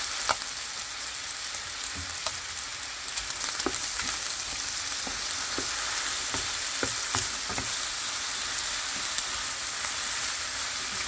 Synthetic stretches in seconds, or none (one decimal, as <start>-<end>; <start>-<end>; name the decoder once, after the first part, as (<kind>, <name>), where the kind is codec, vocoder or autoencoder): none